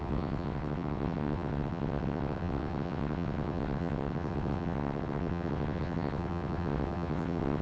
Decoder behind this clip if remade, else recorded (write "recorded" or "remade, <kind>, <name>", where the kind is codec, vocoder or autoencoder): remade, vocoder, WaveNeXt